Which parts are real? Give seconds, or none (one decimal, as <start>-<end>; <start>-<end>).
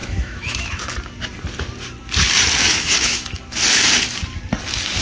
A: 0.8-2.6; 3.4-5.0